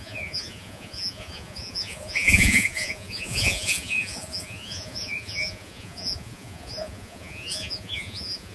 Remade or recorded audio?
remade